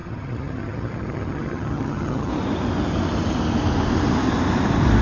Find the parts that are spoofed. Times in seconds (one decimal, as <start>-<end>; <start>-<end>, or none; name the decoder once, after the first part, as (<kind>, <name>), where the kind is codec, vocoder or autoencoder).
0.0-2.3 (vocoder, HiFi-GAN)